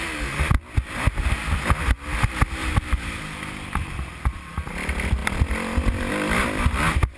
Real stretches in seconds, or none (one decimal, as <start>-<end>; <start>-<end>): 0.0-2.6; 4.7-5.2; 6.1-7.2